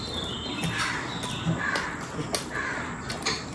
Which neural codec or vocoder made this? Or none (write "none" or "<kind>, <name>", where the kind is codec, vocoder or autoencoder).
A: none